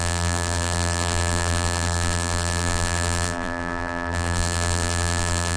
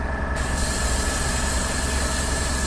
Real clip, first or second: second